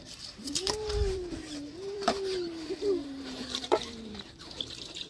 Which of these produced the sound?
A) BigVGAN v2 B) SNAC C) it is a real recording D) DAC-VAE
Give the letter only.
A